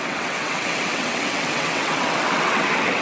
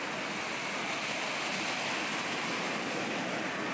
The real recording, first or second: second